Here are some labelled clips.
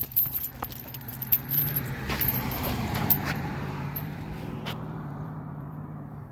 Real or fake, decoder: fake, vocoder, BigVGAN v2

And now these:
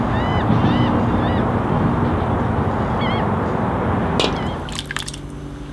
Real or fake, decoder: real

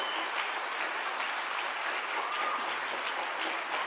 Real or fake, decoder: real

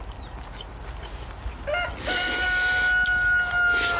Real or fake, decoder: real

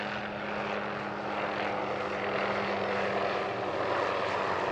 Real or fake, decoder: real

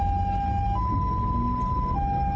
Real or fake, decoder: real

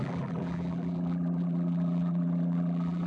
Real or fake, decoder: fake, vocoder, BigVGAN v2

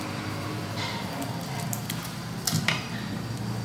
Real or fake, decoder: real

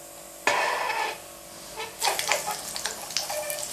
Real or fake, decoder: real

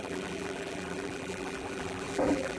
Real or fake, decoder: fake, vocoder, BigVGAN v2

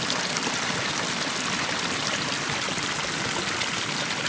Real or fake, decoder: real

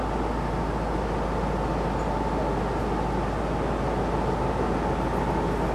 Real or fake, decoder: real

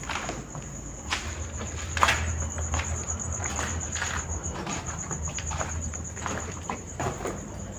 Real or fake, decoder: fake, vocoder, BigVGAN v2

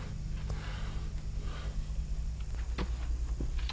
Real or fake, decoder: real